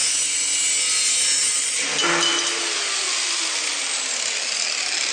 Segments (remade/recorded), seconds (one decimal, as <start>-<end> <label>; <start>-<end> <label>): 0.0-5.1 recorded